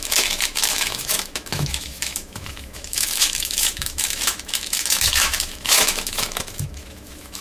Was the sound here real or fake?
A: fake